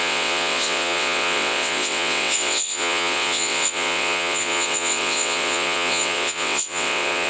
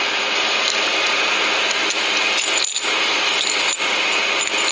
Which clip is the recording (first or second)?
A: second